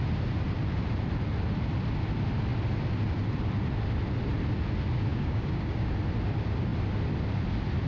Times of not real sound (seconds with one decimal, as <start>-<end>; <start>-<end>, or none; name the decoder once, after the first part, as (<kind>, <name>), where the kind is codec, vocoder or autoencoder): 5.1-5.9 (codec, DAC)